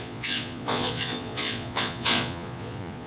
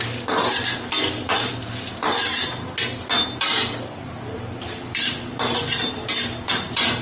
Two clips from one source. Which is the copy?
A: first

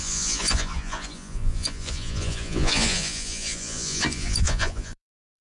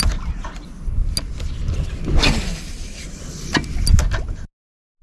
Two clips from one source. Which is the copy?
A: first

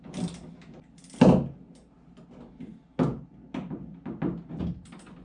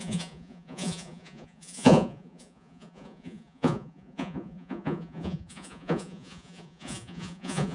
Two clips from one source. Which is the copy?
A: second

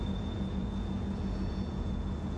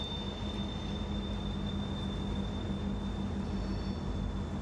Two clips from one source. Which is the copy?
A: first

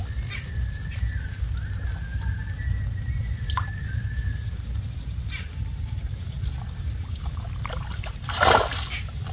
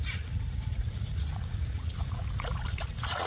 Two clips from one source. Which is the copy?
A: second